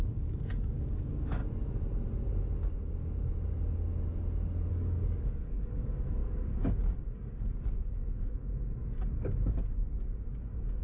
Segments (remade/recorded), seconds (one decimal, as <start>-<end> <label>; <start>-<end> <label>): 0.0-1.4 remade; 1.4-4.7 recorded; 4.7-10.8 remade